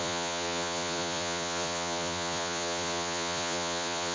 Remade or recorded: remade